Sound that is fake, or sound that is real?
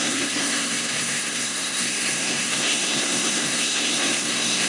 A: fake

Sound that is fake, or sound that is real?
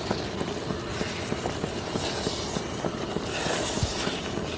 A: real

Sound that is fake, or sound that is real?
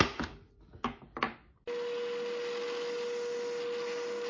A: real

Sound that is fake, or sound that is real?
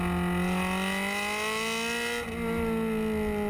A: real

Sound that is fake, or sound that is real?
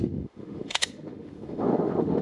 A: fake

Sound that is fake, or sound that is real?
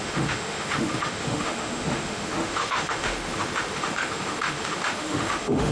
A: fake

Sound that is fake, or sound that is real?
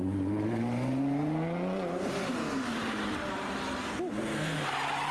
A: real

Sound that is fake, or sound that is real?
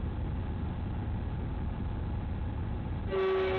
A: real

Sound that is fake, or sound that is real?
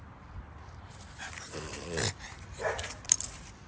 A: fake